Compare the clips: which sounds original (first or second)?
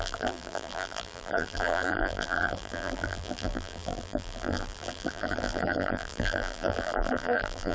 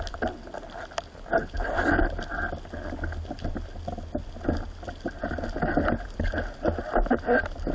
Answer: second